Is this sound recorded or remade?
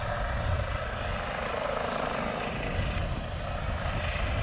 recorded